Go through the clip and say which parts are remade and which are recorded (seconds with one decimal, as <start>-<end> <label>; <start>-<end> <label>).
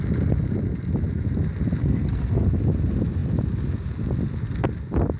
0.0-1.8 recorded; 1.8-2.5 remade; 2.5-5.2 recorded